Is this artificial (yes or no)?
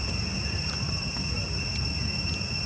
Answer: no